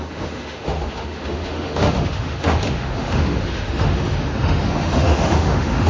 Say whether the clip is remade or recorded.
remade